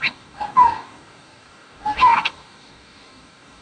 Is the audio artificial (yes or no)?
yes